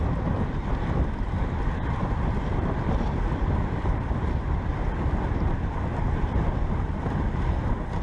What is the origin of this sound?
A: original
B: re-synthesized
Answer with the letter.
A